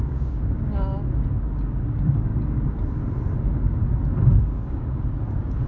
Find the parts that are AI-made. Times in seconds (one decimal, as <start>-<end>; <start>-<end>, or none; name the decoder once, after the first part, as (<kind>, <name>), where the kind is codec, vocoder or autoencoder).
0.0-2.3 (codec, DAC); 3.4-3.8; 4.4-5.7